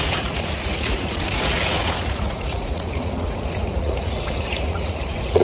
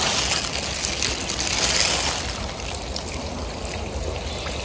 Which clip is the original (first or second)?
second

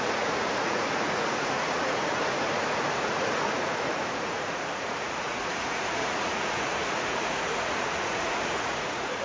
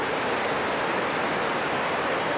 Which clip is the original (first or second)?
second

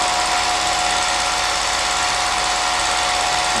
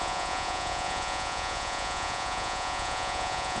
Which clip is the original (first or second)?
first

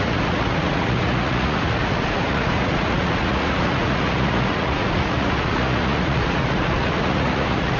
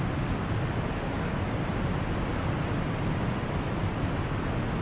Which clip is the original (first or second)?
second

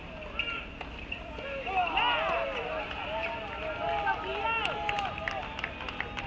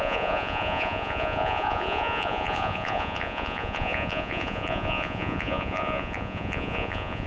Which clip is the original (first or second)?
first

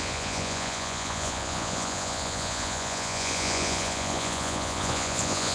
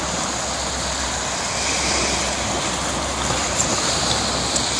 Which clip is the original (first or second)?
second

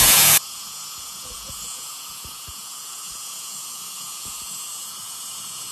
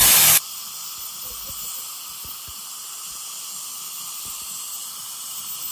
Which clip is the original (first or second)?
second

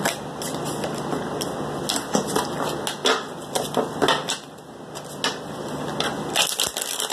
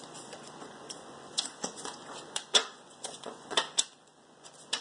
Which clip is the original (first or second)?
first